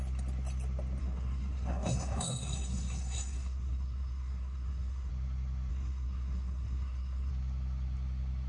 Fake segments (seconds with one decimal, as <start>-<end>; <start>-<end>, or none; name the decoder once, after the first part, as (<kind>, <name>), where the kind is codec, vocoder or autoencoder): 1.0-5.1 (codec, SNAC); 5.7-7.3